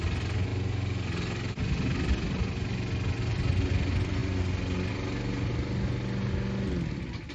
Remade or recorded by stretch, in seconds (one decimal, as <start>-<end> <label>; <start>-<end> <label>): 0.0-7.3 recorded